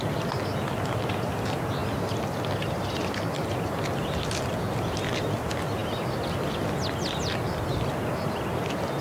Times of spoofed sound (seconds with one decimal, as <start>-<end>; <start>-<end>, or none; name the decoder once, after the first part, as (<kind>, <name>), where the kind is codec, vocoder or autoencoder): none